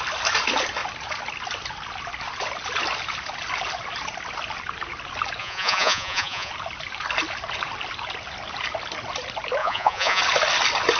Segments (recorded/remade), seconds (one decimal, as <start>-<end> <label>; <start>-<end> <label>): 0.0-5.4 recorded; 5.4-6.5 remade; 6.5-9.6 recorded; 9.6-10.2 remade; 10.2-11.0 recorded